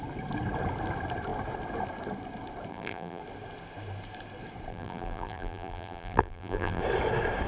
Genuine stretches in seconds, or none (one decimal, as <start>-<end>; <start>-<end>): 0.0-2.7; 3.2-4.7; 6.8-7.5